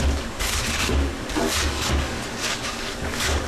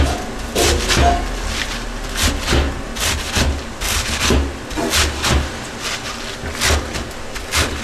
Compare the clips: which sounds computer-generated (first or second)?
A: first